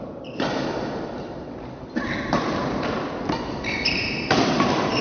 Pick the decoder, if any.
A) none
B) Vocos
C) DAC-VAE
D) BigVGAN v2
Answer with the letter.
D